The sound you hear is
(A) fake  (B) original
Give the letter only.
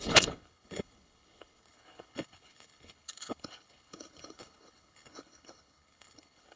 A